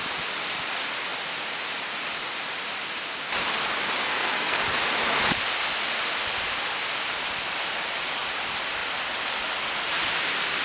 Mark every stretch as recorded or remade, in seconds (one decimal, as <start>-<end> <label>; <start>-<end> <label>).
0.0-4.0 recorded; 4.0-4.6 remade; 4.6-10.6 recorded